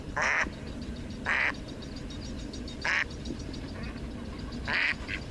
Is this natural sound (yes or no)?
yes